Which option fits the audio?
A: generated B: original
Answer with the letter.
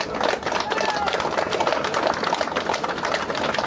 B